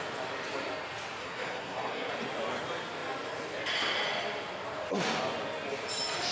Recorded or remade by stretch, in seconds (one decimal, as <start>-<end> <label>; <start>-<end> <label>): 0.0-1.2 recorded; 1.2-2.1 remade; 2.1-6.3 recorded